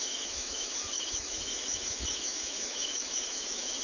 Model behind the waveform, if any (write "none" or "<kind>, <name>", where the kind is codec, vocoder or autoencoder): autoencoder, DAC-VAE